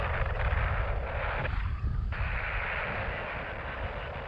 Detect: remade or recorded recorded